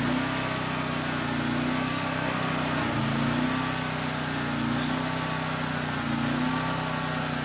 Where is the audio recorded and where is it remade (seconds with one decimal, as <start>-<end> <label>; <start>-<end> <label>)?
0.0-1.9 recorded; 1.9-2.5 remade; 2.5-7.4 recorded